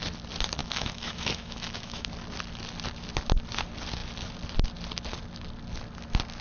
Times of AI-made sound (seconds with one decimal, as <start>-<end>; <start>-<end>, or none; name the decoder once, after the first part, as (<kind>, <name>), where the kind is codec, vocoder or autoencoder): 0.6-2.1 (autoencoder, DAC-VAE)